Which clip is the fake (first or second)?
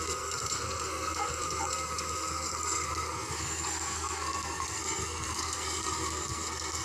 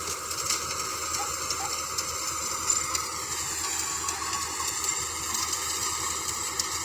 first